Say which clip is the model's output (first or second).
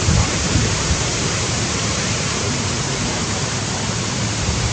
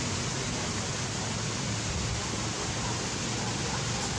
first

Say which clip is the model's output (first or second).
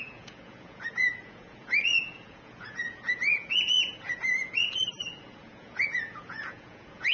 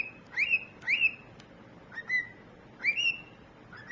first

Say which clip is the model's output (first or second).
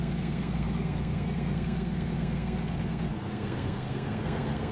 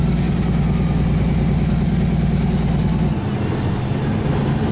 first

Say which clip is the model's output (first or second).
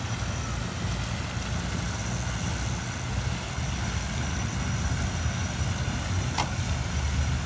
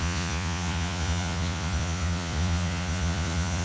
second